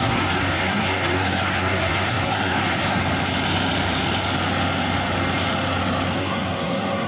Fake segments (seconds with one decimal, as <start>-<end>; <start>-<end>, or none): 0.0-3.0; 6.2-7.1